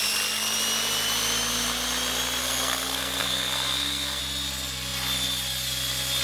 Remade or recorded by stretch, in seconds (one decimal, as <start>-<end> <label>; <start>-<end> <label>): 0.0-2.4 recorded; 2.4-4.2 remade; 4.2-6.2 recorded